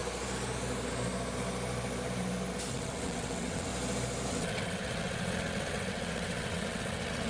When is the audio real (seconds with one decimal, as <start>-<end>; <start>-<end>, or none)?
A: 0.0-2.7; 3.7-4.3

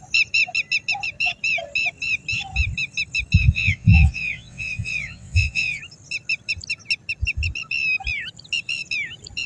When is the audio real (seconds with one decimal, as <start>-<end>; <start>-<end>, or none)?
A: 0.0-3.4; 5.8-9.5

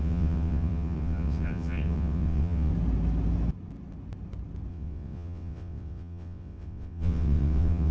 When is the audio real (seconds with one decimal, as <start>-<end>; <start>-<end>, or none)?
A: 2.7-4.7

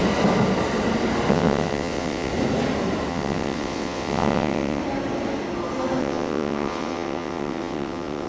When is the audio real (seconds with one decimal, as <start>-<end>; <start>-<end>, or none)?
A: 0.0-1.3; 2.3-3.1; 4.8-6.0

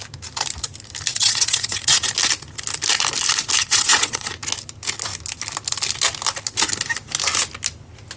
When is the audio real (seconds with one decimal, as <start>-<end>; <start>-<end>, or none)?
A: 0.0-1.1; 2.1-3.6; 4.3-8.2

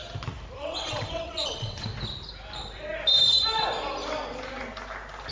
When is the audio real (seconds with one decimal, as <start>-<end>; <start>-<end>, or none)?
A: 0.0-0.6; 1.9-5.3

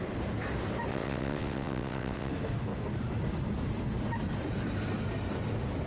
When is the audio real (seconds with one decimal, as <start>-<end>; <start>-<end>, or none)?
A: 0.0-0.9; 2.3-5.9